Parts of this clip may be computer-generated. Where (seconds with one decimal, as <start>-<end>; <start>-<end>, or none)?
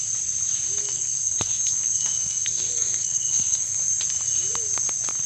0.8-3.8